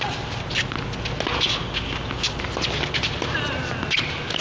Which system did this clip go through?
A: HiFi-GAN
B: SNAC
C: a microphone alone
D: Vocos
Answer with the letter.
C